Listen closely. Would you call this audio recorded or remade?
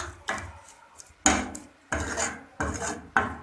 recorded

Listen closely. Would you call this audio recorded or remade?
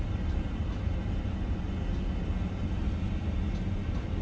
recorded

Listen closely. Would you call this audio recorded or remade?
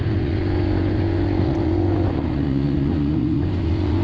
remade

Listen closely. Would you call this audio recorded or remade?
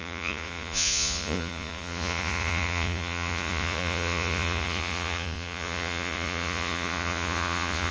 remade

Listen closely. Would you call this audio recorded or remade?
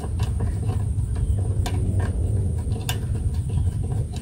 recorded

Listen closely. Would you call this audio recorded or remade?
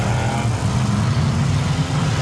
recorded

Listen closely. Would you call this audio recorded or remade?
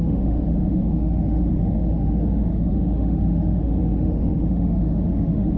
remade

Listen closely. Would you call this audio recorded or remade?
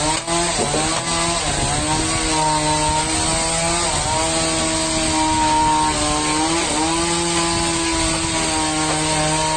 recorded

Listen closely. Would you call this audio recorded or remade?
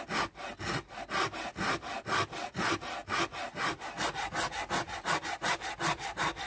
recorded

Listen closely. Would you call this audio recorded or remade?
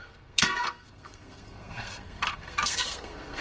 remade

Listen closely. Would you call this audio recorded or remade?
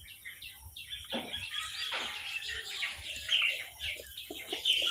recorded